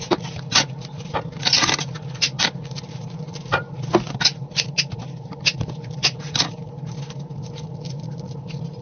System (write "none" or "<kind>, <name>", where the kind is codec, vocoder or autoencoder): vocoder, BigVGAN v2